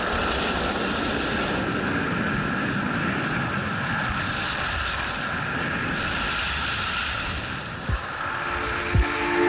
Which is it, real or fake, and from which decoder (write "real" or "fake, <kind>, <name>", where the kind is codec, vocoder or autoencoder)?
real